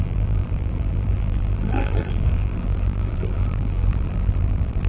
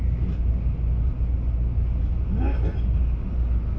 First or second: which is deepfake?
first